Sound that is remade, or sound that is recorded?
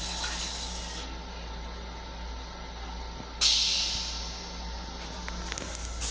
recorded